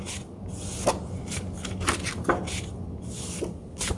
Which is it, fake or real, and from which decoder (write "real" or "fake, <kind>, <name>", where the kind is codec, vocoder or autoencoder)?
real